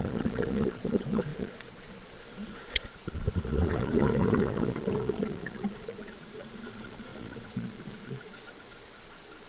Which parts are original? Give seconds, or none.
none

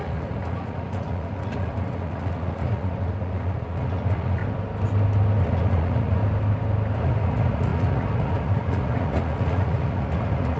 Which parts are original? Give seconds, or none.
4.4-5.4; 6.2-7.0

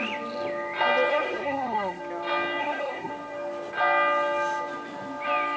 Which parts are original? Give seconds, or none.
0.0-1.1; 2.0-2.6; 3.1-5.6

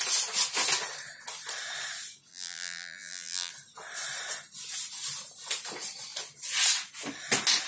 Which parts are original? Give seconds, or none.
0.0-2.3; 3.5-7.7